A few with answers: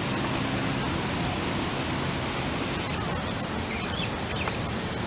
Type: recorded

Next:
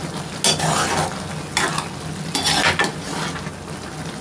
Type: recorded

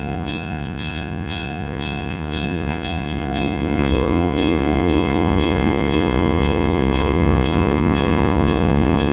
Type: remade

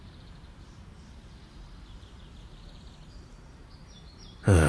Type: remade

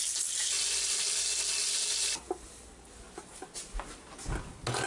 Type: recorded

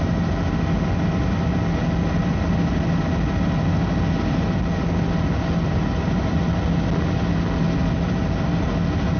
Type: recorded